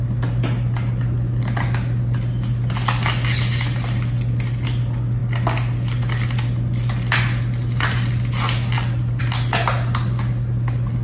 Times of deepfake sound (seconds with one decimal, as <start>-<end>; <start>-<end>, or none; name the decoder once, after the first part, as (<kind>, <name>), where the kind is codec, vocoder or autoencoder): none